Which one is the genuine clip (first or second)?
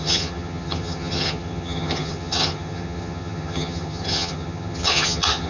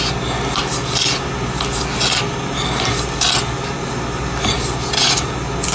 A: second